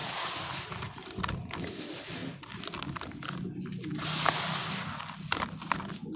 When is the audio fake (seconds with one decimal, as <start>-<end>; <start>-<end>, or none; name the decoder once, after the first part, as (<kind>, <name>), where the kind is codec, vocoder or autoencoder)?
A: none